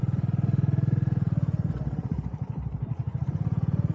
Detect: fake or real real